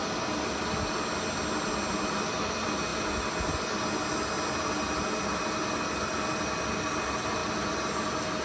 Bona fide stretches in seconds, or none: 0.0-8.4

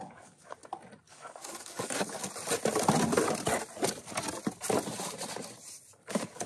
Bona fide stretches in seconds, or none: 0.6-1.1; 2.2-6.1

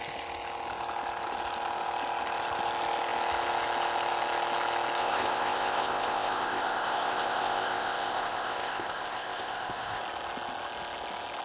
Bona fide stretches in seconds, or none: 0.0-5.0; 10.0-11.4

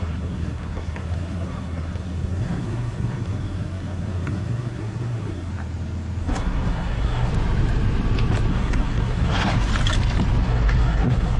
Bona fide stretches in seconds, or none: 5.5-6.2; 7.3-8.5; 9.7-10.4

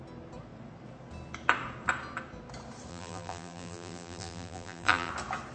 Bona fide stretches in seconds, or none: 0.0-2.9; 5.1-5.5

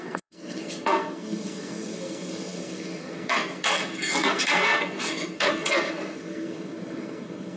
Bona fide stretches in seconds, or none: none

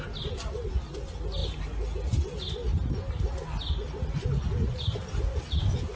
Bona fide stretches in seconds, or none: 0.0-6.0